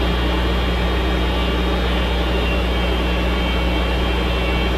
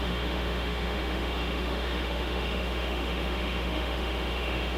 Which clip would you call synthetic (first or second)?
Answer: second